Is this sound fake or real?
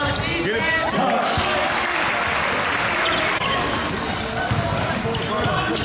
real